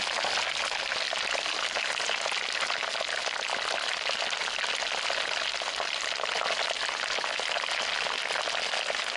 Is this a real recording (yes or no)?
yes